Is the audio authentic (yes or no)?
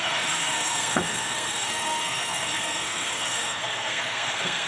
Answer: no